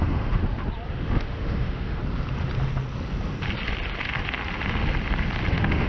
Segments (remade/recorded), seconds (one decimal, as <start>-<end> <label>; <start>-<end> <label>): 0.0-0.4 remade; 0.4-0.9 recorded; 0.9-2.0 remade; 2.0-5.5 recorded; 5.5-5.9 remade